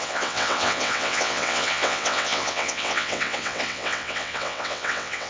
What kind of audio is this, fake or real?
fake